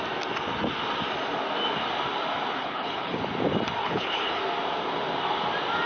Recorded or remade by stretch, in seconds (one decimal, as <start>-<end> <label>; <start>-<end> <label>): 0.0-2.6 recorded; 2.6-3.2 remade; 3.2-3.8 recorded; 3.8-4.4 remade; 4.4-5.9 recorded